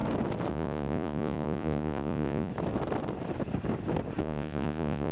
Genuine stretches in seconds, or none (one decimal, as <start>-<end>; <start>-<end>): 0.0-0.5; 2.5-4.2